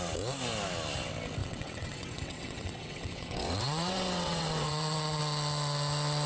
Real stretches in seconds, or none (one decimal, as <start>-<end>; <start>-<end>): 0.0-1.4; 5.2-6.3